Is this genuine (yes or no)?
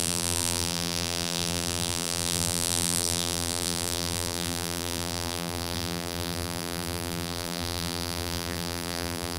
no